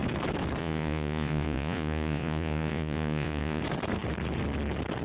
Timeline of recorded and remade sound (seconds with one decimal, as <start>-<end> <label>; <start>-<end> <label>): 0.0-0.6 recorded; 0.6-3.6 remade; 3.6-5.0 recorded